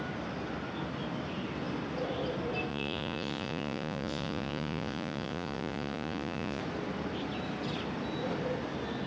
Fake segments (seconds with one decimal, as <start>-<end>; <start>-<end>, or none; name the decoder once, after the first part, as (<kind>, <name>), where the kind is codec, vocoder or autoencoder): 2.7-6.6 (vocoder, Vocos)